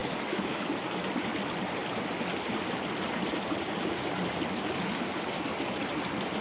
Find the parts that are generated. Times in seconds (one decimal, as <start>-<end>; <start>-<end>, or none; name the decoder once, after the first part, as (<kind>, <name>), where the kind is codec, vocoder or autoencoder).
0.0-0.7 (codec, DAC)